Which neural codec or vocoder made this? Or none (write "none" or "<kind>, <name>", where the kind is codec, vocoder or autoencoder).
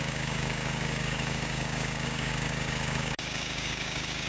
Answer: codec, DAC